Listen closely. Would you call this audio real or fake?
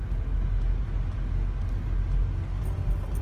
real